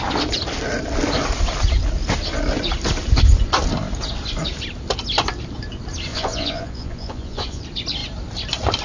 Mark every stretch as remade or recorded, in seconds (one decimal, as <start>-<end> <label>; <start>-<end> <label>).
0.0-6.1 recorded; 6.1-7.6 remade; 7.6-8.8 recorded